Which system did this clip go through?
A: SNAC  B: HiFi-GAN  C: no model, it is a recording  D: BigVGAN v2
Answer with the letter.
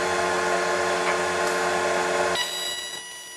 C